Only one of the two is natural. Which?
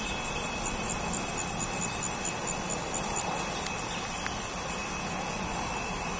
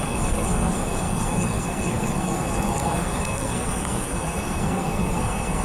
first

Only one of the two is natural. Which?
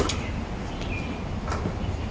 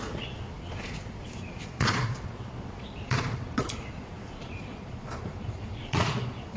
first